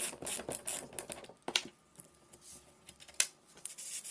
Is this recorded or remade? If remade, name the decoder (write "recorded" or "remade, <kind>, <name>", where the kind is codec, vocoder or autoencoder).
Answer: remade, vocoder, BigVGAN v2